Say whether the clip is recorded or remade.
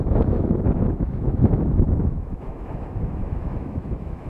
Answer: remade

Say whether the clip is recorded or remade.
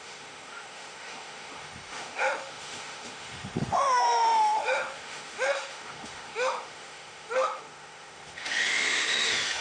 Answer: remade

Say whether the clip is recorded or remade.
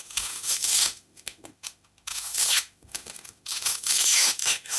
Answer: remade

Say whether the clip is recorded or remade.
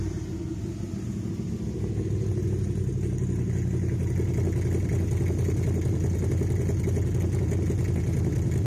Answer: recorded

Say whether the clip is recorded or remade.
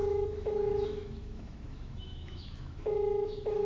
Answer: remade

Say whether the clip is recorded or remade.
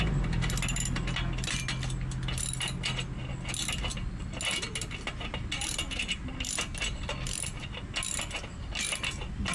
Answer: recorded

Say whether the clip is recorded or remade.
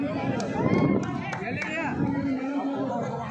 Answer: recorded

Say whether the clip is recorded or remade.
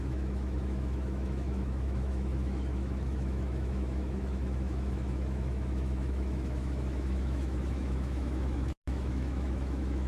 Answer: remade